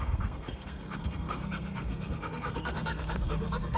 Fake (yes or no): yes